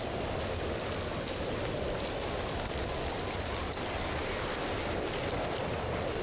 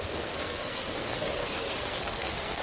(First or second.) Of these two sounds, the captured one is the first